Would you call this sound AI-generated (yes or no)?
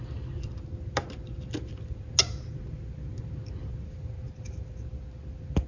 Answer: no